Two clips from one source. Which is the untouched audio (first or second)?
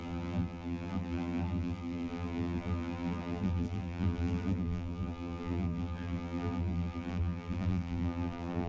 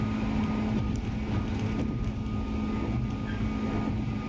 second